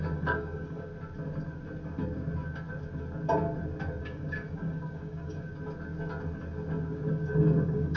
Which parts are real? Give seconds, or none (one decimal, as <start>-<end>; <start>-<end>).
0.9-4.0; 5.5-7.1